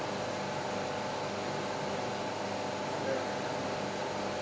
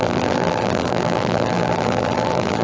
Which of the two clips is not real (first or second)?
second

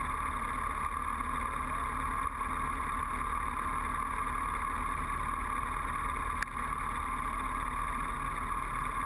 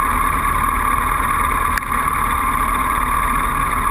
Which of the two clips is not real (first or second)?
second